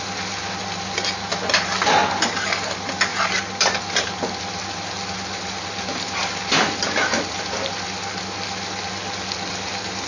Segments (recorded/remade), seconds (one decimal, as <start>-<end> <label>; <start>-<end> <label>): 0.0-10.1 recorded